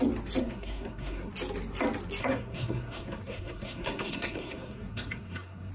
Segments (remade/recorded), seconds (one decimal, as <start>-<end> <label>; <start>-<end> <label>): 0.0-0.4 recorded; 0.4-1.3 remade; 1.3-2.2 recorded; 2.2-5.7 remade